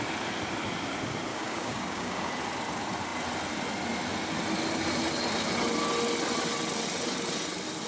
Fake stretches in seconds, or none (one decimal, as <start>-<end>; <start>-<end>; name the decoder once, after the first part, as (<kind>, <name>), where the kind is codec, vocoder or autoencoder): 1.3-2.3 (codec, DAC)